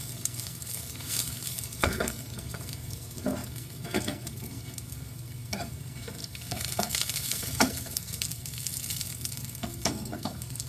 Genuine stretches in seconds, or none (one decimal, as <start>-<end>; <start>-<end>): none